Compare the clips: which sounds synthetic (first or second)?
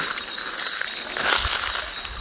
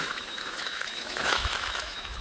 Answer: second